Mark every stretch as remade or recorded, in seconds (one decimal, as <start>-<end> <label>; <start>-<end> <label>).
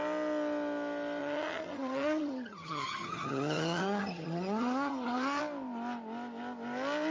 0.0-1.2 recorded; 1.2-5.4 remade; 5.4-7.1 recorded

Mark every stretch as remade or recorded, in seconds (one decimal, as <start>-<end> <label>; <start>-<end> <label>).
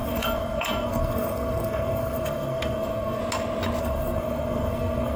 0.0-3.2 remade; 3.2-3.8 recorded; 3.8-5.2 remade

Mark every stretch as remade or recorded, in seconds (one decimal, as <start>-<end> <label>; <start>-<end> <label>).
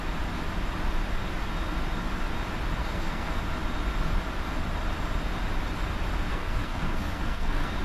0.0-2.8 recorded; 2.8-3.4 remade; 3.4-6.3 recorded; 6.3-7.8 remade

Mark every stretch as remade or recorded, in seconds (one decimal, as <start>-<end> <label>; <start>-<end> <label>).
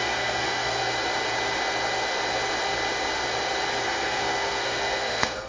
0.0-0.8 remade; 0.8-3.8 recorded; 3.8-5.5 remade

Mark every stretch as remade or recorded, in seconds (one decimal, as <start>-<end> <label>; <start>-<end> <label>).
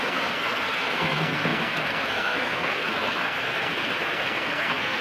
0.0-5.0 remade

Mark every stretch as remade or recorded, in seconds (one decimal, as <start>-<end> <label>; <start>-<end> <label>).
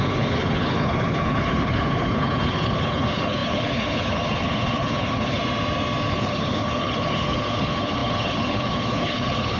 0.0-5.4 remade; 5.4-6.1 recorded; 6.1-9.6 remade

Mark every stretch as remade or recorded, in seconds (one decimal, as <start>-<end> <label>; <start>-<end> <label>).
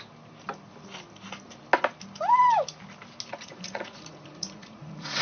0.0-3.3 recorded; 3.3-5.2 remade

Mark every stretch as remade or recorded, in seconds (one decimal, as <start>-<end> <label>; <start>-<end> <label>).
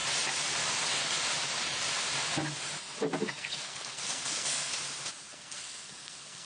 0.0-3.3 recorded; 3.3-4.7 remade; 4.7-5.2 recorded; 5.2-6.5 remade